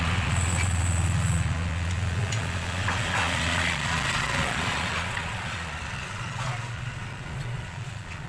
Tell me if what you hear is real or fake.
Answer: fake